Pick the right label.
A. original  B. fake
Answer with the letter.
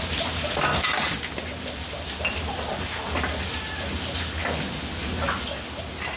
A